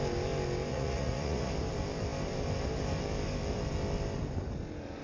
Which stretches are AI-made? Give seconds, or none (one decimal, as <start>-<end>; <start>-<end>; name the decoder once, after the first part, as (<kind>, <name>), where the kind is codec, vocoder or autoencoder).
0.7-1.5 (vocoder, Vocos)